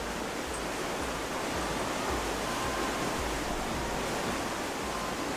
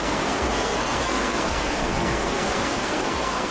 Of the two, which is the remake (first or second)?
second